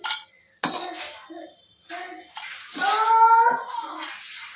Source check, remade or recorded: recorded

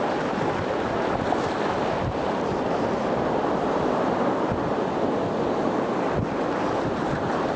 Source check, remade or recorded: recorded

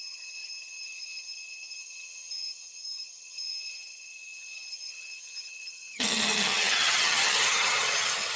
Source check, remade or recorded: remade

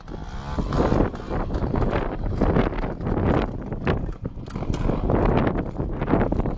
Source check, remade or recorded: recorded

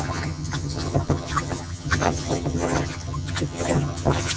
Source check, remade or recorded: remade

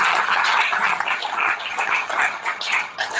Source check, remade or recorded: remade